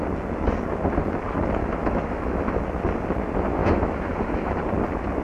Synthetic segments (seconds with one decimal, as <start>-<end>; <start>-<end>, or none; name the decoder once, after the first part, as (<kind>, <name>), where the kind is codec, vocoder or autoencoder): 1.6-2.6 (autoencoder, DAC-VAE); 3.6-4.6